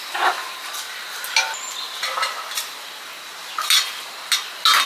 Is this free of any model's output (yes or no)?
yes